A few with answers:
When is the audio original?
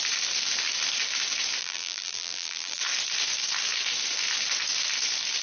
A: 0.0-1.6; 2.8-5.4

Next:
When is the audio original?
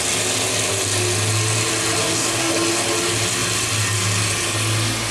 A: 0.0-2.0; 2.5-5.1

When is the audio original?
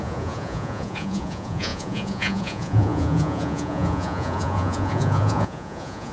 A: none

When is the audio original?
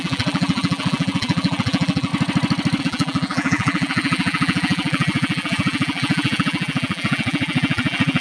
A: 2.1-2.8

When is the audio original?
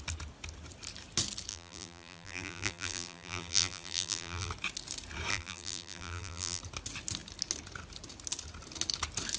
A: 0.0-1.5; 4.5-5.3; 6.6-9.4